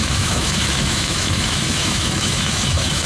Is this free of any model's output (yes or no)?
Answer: no